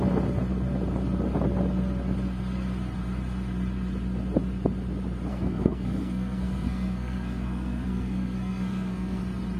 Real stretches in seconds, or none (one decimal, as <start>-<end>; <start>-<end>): 0.0-5.3; 9.2-9.6